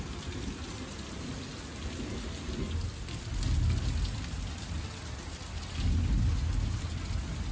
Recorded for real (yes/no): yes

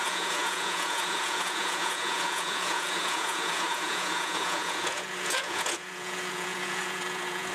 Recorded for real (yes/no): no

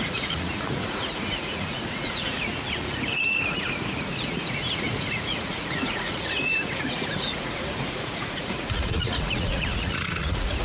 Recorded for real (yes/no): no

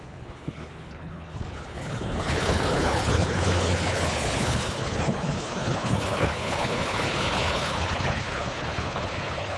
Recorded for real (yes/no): no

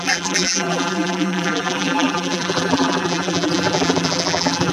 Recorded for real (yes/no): no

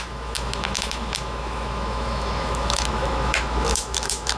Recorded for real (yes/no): no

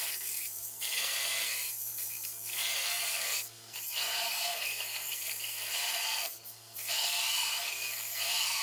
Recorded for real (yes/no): no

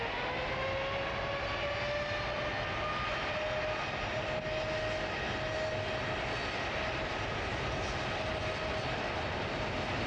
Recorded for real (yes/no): yes